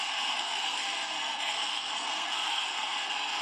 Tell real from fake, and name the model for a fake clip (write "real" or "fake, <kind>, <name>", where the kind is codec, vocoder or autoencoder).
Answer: fake, codec, SNAC